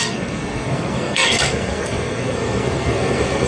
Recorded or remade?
remade